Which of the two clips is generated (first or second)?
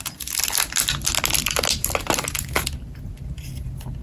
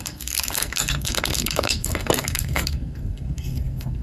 second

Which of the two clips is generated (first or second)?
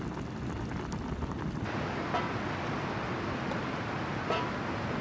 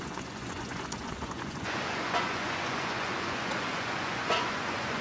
second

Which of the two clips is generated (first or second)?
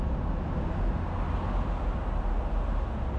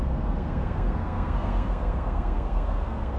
second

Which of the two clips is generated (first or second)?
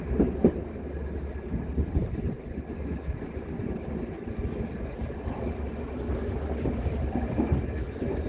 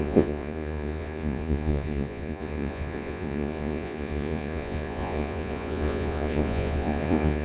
second